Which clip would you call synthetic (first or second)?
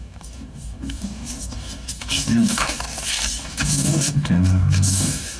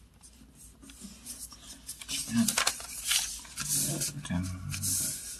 first